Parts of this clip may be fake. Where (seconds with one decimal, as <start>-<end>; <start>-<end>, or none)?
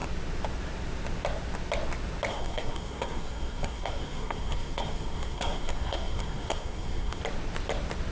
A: 2.3-7.2